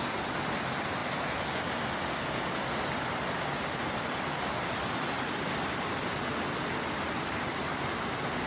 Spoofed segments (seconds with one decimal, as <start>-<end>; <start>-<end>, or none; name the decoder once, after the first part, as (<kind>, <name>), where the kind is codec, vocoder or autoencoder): none